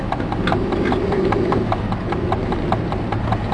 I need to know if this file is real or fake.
real